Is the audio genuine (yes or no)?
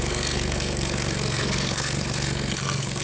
no